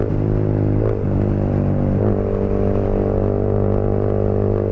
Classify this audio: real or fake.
real